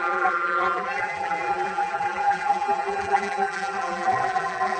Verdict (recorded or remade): remade